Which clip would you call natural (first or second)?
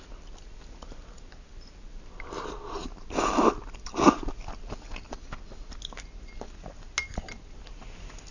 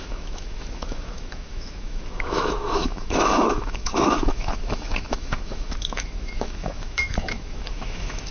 first